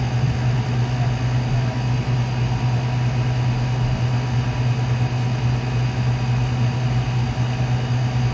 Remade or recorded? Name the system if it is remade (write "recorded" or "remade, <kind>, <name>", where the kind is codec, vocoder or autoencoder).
recorded